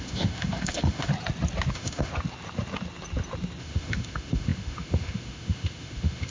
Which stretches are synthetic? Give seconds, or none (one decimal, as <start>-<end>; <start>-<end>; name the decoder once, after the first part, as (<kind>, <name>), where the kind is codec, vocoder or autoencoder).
0.0-1.1 (autoencoder, DAC-VAE); 1.7-2.1; 3.6-6.3